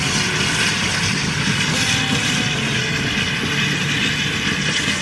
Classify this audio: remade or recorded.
recorded